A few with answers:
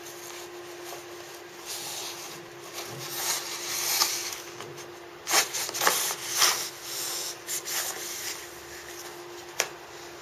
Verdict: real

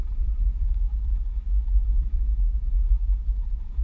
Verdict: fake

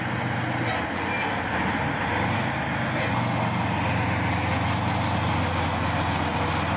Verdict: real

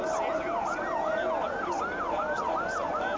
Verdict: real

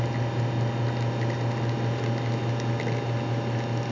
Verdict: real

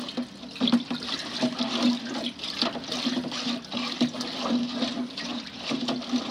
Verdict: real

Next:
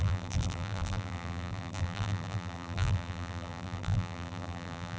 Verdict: fake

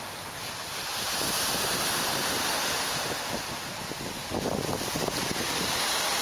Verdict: real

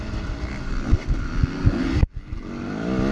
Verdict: real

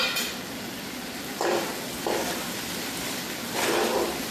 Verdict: real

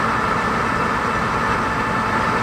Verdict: real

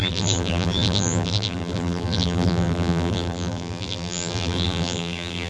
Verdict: fake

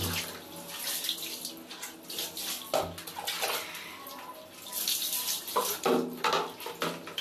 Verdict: real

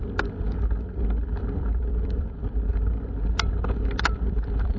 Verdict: fake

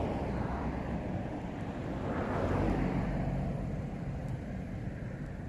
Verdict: fake